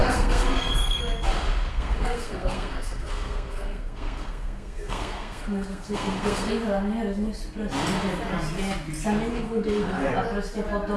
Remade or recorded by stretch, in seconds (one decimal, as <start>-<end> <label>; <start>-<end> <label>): 0.0-1.0 remade; 1.0-1.7 recorded; 1.7-6.5 remade; 6.5-9.3 recorded; 9.3-10.1 remade; 10.1-11.0 recorded